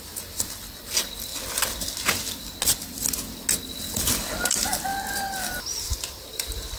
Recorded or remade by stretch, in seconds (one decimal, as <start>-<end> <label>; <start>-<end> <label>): 0.0-6.8 recorded